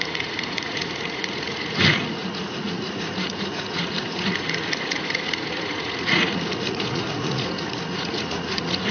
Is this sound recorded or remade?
remade